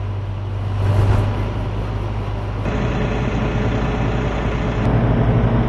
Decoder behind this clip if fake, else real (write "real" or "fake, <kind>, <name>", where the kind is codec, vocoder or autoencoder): real